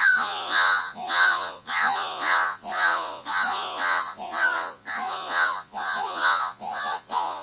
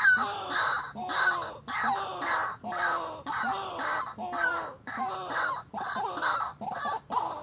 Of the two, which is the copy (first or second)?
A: first